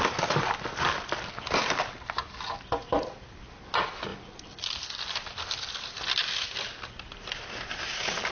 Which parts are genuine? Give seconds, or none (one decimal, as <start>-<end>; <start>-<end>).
0.0-8.3